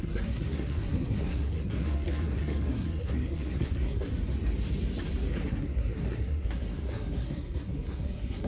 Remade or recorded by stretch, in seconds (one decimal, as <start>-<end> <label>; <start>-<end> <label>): 0.0-4.1 remade; 4.1-5.3 recorded; 5.3-8.5 remade